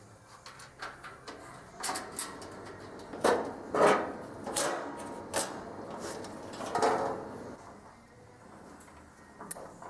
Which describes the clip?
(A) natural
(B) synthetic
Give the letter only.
A